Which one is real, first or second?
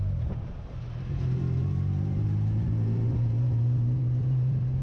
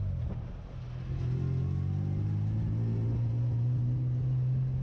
second